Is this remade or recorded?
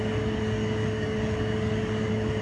remade